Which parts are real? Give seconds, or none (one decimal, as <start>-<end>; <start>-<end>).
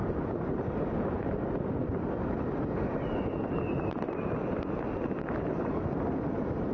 0.0-6.7